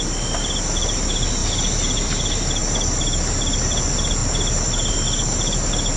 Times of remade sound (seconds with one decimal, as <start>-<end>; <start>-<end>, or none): none